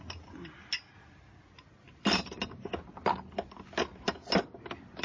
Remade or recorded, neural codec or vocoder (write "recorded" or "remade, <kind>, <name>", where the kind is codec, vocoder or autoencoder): recorded